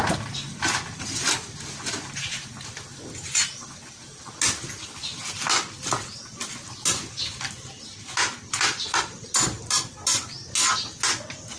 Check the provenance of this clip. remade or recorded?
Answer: recorded